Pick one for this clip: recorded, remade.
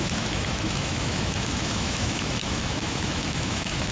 remade